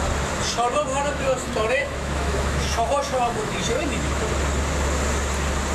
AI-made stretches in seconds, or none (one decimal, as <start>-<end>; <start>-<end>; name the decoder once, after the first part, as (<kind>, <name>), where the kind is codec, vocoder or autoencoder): 0.9-4.3 (autoencoder, DAC-VAE)